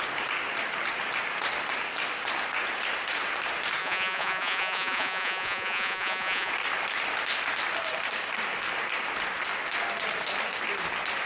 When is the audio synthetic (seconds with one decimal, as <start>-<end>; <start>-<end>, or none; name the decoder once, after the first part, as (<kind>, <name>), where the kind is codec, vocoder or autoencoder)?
3.8-6.5 (vocoder, Vocos)